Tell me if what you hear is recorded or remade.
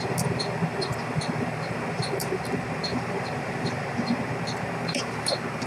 remade